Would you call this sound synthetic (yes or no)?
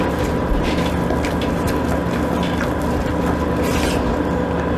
yes